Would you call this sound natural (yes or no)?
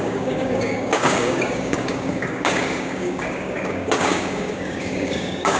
no